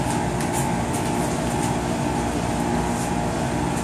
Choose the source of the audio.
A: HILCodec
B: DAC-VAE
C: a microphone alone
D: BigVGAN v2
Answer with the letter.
C